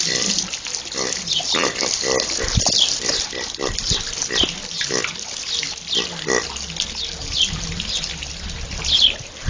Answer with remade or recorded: recorded